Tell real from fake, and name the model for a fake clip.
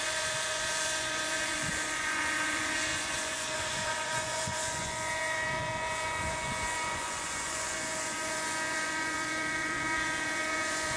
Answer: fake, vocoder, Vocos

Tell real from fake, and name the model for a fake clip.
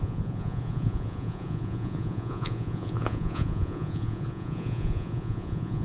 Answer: fake, vocoder, Vocos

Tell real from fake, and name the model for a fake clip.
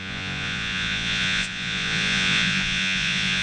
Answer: fake, vocoder, Vocos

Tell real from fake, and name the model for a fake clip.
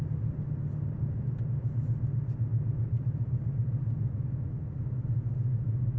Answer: real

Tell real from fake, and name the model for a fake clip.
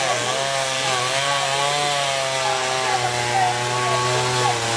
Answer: real